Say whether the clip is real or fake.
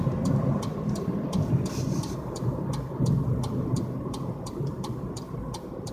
fake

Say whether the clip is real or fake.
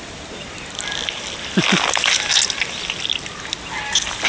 real